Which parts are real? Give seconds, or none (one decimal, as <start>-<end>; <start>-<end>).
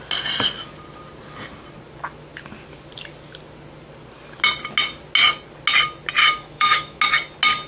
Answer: 0.0-6.2; 7.0-7.7